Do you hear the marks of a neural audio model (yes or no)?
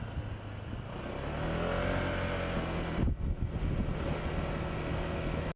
no